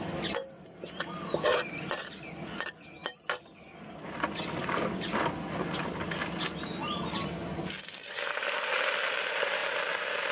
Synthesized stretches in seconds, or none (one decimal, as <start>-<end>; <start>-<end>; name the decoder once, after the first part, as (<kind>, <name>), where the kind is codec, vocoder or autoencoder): none

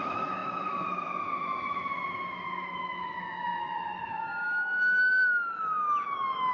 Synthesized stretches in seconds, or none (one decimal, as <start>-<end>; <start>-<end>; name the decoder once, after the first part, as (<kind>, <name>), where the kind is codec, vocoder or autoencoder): 0.0-6.5 (autoencoder, DAC-VAE)

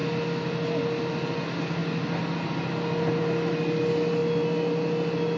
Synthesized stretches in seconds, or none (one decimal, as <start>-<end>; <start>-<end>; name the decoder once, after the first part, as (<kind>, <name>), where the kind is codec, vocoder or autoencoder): none

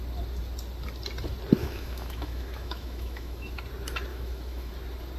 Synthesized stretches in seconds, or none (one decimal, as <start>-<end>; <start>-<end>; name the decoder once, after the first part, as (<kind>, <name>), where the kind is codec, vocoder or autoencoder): 1.6-3.6 (autoencoder, DAC-VAE); 4.1-4.7

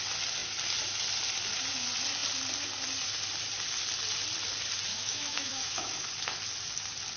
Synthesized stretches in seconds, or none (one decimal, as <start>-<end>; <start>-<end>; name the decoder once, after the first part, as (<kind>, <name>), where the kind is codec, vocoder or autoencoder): 4.9-6.1 (autoencoder, DAC-VAE)

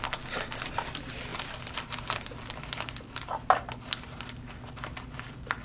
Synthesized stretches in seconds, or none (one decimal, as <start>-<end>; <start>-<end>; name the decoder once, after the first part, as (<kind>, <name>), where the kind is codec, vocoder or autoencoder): none

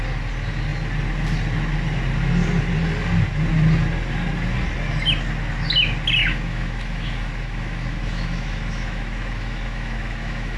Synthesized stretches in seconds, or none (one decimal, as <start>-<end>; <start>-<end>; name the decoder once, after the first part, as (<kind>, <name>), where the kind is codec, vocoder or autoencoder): 6.2-10.6 (autoencoder, DAC-VAE)